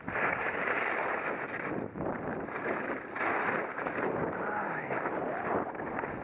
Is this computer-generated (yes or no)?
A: yes